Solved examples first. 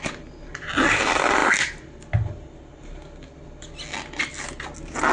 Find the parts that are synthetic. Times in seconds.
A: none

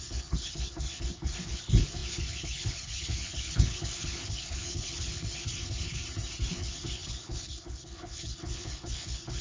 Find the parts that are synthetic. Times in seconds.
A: 0.0-6.0 (codec, HILCodec); 6.5-9.4

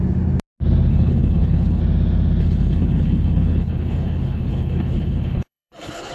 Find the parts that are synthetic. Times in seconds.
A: 0.9-1.8 (codec, HILCodec); 2.4-6.1